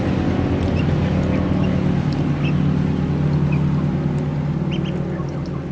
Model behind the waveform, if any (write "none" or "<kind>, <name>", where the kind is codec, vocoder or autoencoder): none